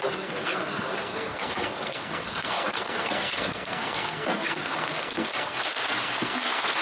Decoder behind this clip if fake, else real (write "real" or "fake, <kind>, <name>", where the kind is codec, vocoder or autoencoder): fake, codec, SNAC